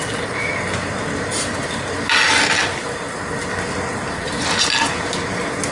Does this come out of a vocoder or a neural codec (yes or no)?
no